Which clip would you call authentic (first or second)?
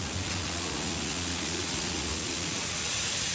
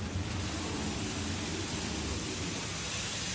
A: second